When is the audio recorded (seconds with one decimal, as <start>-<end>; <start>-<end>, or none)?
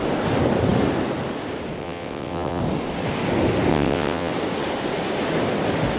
0.0-1.8; 2.6-3.7; 4.3-6.0